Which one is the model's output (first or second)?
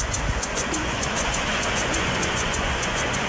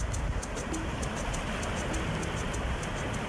first